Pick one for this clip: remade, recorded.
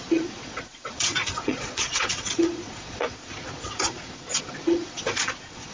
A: remade